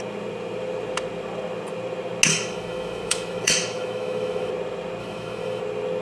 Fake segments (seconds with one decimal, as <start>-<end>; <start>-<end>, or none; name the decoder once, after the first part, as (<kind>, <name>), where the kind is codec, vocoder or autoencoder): 2.3-4.5 (autoencoder, DAC-VAE); 5.0-5.6

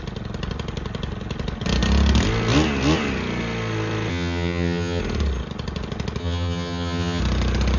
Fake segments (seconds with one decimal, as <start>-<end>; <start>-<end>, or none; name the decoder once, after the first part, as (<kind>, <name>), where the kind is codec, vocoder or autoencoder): 4.1-5.0 (vocoder, HiFi-GAN); 6.2-7.2

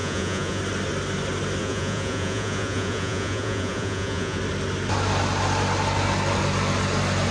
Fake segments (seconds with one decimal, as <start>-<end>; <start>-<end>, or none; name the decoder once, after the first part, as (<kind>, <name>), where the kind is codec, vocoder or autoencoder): 0.0-0.6 (vocoder, Vocos); 1.6-4.4

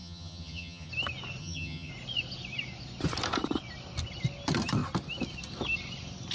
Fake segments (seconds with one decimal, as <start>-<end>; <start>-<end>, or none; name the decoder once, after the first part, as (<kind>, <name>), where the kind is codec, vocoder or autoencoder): 0.0-0.9 (vocoder, HiFi-GAN); 1.4-1.9

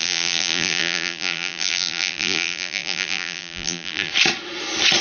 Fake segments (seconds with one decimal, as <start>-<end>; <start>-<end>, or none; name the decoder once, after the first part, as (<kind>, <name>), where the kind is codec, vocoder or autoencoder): 0.0-4.1 (vocoder, BigVGAN v2)